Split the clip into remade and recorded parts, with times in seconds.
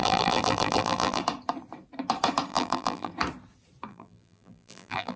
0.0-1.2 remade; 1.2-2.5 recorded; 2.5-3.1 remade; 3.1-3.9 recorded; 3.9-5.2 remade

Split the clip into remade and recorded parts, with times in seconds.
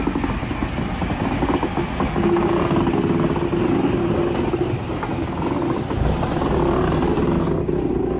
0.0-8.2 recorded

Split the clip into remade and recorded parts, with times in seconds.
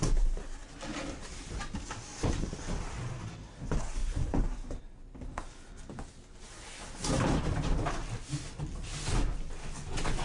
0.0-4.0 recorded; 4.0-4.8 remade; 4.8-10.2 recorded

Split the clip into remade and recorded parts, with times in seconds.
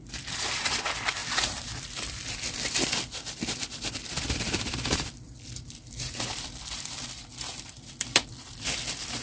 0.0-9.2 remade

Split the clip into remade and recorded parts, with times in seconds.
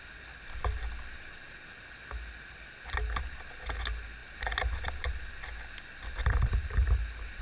0.0-7.4 recorded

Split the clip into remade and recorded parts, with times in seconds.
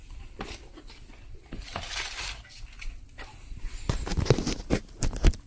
0.0-5.5 recorded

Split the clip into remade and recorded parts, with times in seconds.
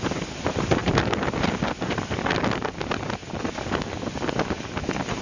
0.0-0.8 recorded; 0.8-2.4 remade; 2.4-5.2 recorded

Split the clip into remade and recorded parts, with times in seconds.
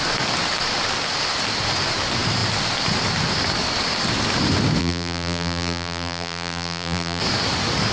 0.0-4.8 recorded; 4.8-7.2 remade; 7.2-7.9 recorded